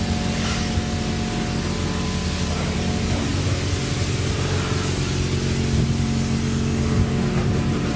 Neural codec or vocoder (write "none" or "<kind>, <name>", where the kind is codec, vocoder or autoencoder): none